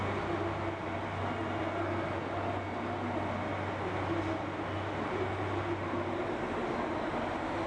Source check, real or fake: real